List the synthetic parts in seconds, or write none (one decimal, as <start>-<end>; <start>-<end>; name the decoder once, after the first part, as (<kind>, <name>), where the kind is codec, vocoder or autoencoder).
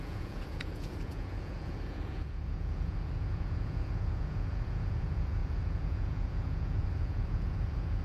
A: 0.0-8.0 (vocoder, Vocos)